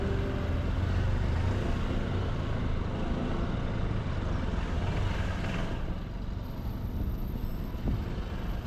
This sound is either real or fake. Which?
real